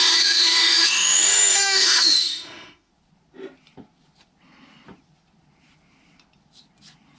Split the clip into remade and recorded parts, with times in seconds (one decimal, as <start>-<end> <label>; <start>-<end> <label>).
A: 0.0-2.9 remade; 2.9-7.2 recorded